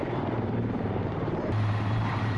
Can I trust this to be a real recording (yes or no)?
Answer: no